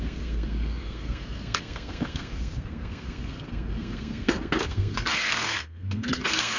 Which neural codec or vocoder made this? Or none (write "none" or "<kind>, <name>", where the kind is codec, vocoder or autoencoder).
codec, SNAC